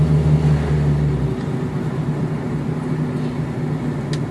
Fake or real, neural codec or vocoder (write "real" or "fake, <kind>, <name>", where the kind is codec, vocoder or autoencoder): real